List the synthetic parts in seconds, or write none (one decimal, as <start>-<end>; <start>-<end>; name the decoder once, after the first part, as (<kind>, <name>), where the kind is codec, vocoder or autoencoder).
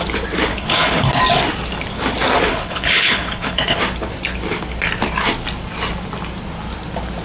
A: 0.5-1.2 (codec, HILCodec); 2.5-3.8